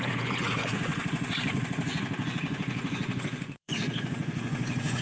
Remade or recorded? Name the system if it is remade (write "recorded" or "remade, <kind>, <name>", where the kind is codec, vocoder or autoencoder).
remade, vocoder, Vocos